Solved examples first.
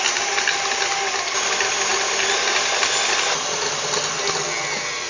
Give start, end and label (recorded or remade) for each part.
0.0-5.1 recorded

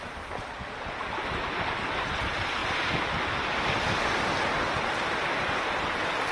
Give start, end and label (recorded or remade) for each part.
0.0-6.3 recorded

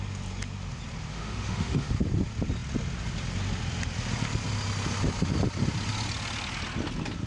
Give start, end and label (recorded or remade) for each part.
0.0-1.1 recorded; 1.1-1.9 remade; 1.9-7.3 recorded

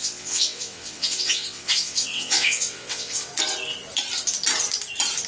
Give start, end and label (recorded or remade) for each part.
0.0-3.3 remade; 3.3-5.3 recorded

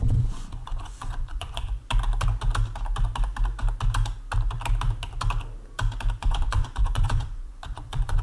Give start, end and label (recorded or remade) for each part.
0.0-1.8 remade; 1.8-6.2 recorded; 6.2-8.2 remade

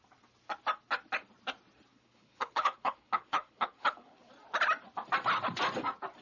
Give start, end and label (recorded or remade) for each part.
0.0-1.9 recorded; 1.9-4.3 remade; 4.3-6.2 recorded